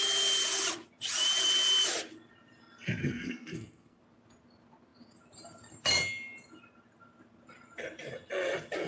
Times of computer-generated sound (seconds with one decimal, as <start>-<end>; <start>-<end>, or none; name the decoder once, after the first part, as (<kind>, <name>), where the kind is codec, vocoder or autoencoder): 3.0-4.0 (codec, SNAC)